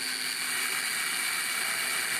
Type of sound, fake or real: real